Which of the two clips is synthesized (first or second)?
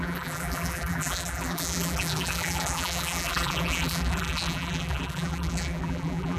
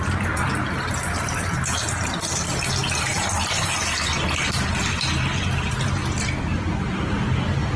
first